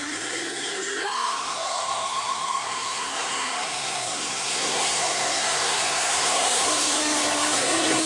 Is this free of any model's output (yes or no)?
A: no